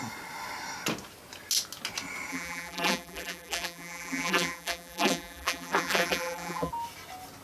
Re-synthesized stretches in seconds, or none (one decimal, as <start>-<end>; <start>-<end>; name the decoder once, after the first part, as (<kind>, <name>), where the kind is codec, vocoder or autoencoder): 2.3-6.7 (vocoder, BigVGAN v2)